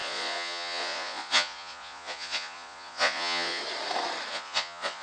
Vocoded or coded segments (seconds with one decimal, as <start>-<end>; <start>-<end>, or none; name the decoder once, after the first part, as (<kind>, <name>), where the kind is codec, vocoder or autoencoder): 0.0-3.6 (vocoder, Vocos); 4.3-5.0